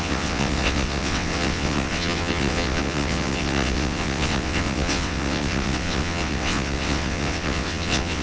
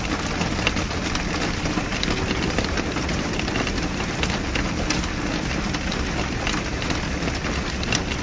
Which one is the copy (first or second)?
first